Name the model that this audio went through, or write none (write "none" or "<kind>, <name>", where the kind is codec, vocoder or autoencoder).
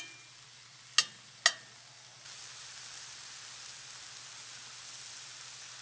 none